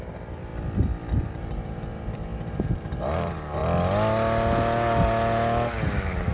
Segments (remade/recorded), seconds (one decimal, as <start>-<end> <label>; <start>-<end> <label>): 0.0-0.5 remade; 0.5-1.1 recorded; 1.1-3.6 remade; 3.6-6.3 recorded